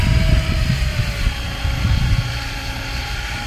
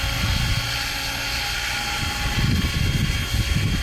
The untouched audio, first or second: second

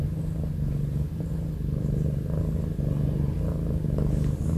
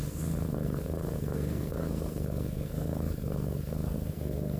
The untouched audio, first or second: first